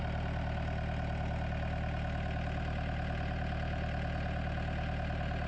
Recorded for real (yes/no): yes